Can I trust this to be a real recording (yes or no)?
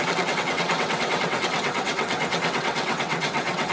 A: no